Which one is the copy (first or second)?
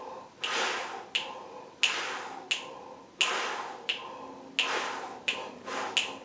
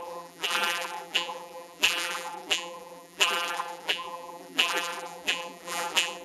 second